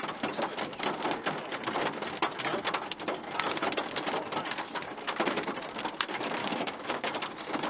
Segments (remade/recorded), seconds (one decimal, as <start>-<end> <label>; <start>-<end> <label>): 0.0-6.4 recorded; 6.4-7.2 remade; 7.2-7.7 recorded